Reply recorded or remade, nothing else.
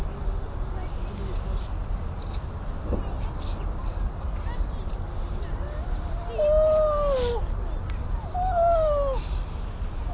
recorded